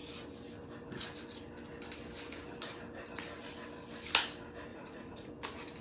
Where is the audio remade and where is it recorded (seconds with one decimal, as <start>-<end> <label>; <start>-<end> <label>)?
0.0-4.7 recorded; 4.7-5.3 remade; 5.3-5.8 recorded